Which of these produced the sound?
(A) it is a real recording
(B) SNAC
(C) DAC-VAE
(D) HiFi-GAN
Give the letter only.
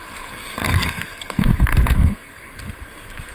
B